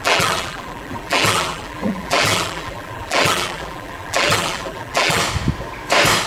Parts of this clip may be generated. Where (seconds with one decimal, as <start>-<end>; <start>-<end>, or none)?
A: 0.0-5.2